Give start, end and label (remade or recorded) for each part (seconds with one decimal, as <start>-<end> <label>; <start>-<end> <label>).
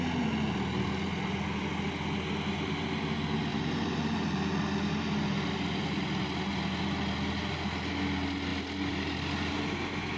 0.0-3.5 recorded; 3.5-4.5 remade; 4.5-10.2 recorded